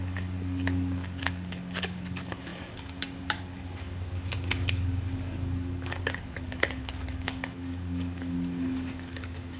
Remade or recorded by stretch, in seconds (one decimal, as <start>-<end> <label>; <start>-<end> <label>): 0.0-9.6 remade